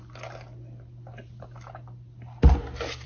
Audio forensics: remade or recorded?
recorded